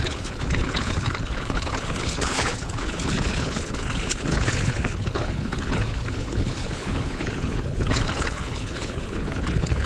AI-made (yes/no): yes